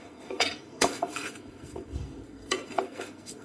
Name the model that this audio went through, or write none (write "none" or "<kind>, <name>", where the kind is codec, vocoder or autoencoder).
codec, SNAC